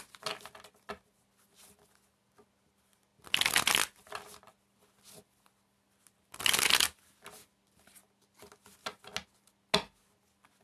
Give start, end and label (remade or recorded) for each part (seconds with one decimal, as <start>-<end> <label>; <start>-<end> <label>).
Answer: 0.0-10.6 recorded

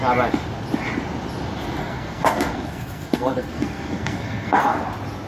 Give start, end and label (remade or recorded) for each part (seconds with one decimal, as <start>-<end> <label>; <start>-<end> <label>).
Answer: 0.0-1.8 recorded; 1.8-4.8 remade; 4.8-5.3 recorded